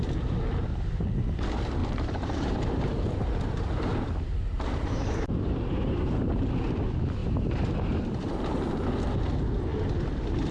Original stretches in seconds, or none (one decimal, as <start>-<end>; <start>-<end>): 0.0-1.8; 6.5-7.2; 8.4-10.5

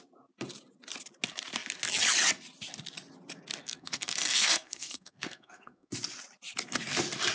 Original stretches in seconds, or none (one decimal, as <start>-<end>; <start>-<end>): 0.0-3.6; 5.9-7.3

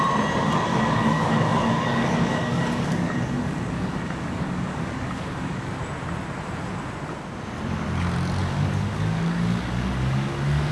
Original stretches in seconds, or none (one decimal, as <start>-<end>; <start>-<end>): 0.0-0.7; 5.7-8.4

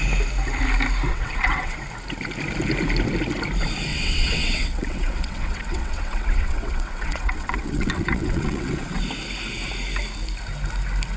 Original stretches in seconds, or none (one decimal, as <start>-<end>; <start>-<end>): 0.0-1.1; 1.8-3.9; 9.0-11.2

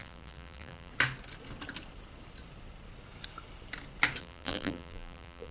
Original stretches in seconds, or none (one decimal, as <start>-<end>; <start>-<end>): 0.9-4.2